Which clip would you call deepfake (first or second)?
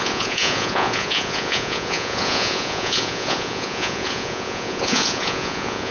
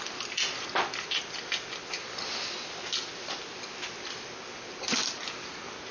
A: first